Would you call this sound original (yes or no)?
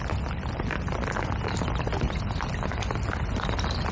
yes